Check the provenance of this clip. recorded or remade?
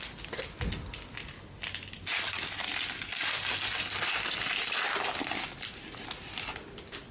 recorded